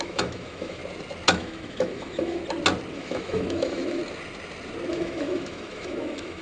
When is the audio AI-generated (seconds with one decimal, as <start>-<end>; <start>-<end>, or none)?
0.0-0.8; 1.3-2.4; 2.9-4.0; 4.9-6.4